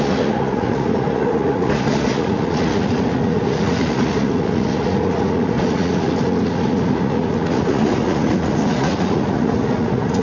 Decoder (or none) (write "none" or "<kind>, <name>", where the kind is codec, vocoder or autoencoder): vocoder, Vocos